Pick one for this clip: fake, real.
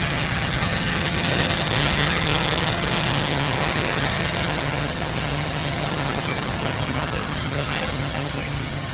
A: fake